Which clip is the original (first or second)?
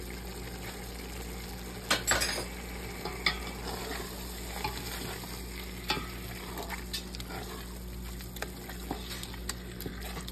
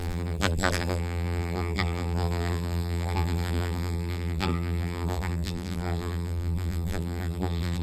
first